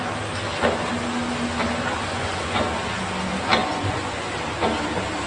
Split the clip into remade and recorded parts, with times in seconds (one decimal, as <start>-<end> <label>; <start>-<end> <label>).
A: 0.0-2.0 recorded; 2.0-2.6 remade; 2.6-3.6 recorded; 3.6-4.3 remade; 4.3-5.3 recorded